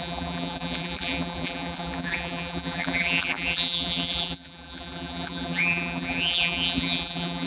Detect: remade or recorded remade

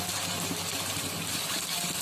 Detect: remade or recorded recorded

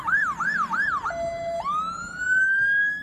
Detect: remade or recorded recorded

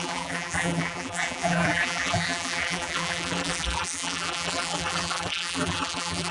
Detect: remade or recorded remade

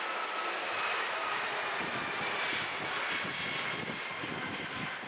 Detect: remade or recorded recorded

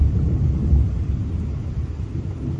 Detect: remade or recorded recorded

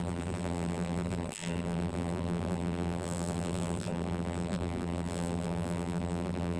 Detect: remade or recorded remade